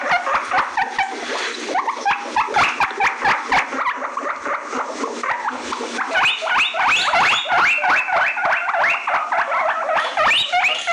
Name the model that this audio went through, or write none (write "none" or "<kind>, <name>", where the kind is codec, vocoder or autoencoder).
none